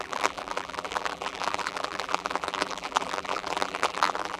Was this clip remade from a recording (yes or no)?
yes